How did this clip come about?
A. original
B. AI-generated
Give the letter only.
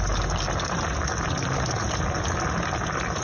A